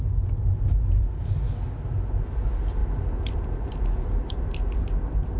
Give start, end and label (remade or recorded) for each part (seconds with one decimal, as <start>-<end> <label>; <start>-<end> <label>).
0.0-5.4 recorded